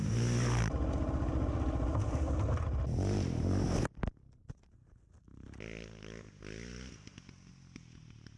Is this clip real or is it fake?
real